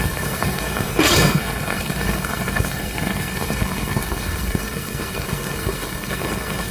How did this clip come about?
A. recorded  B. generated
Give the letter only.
B